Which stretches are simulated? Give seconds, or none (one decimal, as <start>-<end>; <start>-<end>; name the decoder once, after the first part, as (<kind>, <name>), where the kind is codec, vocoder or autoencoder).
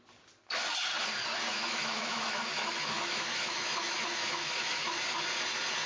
1.5-5.0 (autoencoder, DAC-VAE)